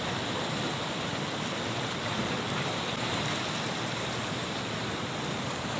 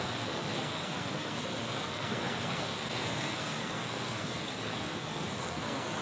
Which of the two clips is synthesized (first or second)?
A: second